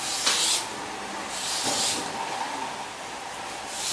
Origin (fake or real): real